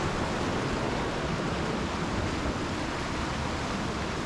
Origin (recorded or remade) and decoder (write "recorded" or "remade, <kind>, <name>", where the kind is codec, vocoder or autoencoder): recorded